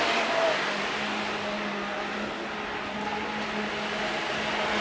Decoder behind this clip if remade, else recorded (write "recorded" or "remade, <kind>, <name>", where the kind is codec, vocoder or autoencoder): recorded